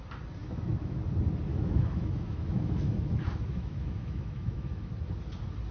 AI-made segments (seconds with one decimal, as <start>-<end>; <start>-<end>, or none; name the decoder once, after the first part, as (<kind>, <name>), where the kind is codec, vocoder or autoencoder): 0.4-1.0 (autoencoder, DAC-VAE); 1.5-4.9